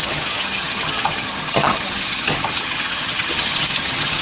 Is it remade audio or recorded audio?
remade